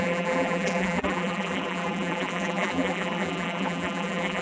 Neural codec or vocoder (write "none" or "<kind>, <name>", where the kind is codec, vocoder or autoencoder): vocoder, BigVGAN v2